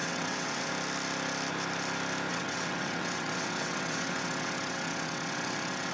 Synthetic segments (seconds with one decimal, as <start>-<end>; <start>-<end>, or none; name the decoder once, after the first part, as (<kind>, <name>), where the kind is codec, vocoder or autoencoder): 0.0-0.7 (vocoder, WaveNeXt); 2.3-5.9

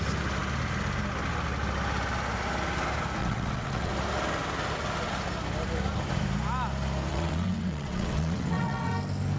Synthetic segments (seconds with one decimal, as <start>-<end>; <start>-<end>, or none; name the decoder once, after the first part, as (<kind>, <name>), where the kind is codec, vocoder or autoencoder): 3.2-3.9 (vocoder, WaveNeXt); 7.1-8.9

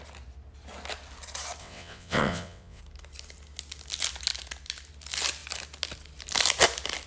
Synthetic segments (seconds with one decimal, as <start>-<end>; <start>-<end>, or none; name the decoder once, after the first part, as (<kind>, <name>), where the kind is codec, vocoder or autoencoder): 1.6-2.8 (vocoder, WaveNeXt)

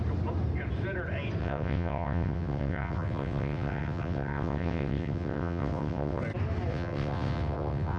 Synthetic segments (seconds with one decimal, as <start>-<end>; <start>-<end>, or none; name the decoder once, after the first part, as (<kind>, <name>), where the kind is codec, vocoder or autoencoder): 1.4-6.2 (vocoder, WaveNeXt); 6.7-8.0

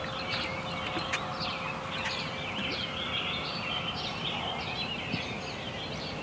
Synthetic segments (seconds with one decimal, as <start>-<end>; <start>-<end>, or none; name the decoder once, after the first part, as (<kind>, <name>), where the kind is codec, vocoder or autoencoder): none

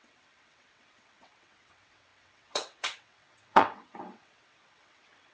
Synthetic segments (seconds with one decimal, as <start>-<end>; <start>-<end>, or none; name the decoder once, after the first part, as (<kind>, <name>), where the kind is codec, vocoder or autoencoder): 0.0-5.3 (vocoder, WaveNeXt)